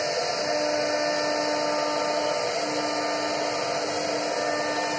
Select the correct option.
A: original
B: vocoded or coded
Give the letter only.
A